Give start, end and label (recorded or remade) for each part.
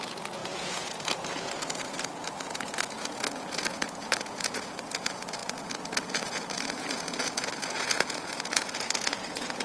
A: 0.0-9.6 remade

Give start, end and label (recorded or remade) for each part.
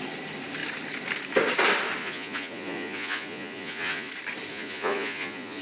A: 0.0-2.0 recorded; 2.0-4.1 remade; 4.1-4.5 recorded; 4.5-5.6 remade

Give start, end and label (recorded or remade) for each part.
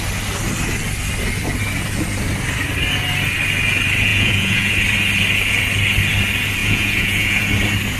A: 0.0-4.1 recorded; 4.1-4.7 remade; 4.7-6.6 recorded; 6.6-7.4 remade; 7.4-8.0 recorded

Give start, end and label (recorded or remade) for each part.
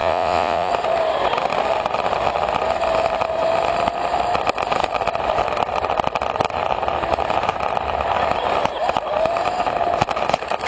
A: 0.0-0.7 remade; 0.7-10.7 recorded